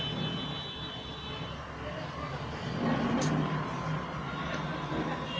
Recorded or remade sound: recorded